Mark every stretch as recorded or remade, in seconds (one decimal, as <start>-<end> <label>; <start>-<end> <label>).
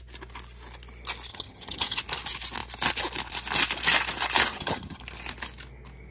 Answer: 0.0-1.3 recorded; 1.3-2.0 remade; 2.0-4.5 recorded; 4.5-5.0 remade; 5.0-6.1 recorded